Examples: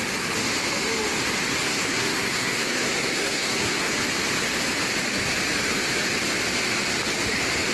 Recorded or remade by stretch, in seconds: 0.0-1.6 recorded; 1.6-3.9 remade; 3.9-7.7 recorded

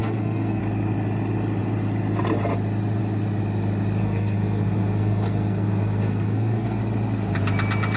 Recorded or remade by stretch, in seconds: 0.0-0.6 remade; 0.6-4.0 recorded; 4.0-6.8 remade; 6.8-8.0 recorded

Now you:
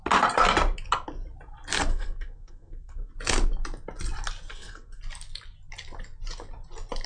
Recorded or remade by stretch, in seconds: 0.0-1.9 recorded; 1.9-3.1 remade; 3.1-4.5 recorded; 4.5-5.0 remade; 5.0-7.1 recorded

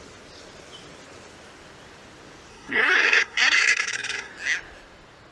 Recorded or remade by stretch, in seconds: 0.0-2.5 recorded; 2.5-4.3 remade; 4.3-5.3 recorded

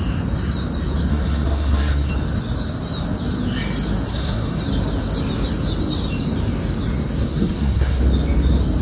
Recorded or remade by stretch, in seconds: 0.0-1.1 recorded; 1.1-2.1 remade; 2.1-4.1 recorded; 4.1-4.6 remade; 4.6-7.2 recorded; 7.2-8.0 remade; 8.0-8.8 recorded

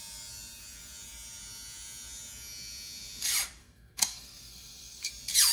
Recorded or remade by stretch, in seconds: 0.0-3.6 recorded; 3.6-5.1 remade; 5.1-5.5 recorded

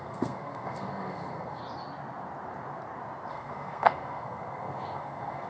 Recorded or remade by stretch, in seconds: 0.0-1.6 remade; 1.6-3.3 recorded; 3.3-5.5 remade